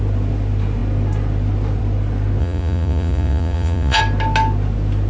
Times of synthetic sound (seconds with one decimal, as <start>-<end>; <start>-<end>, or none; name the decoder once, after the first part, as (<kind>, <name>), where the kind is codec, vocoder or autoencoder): 2.4-4.0 (vocoder, Vocos)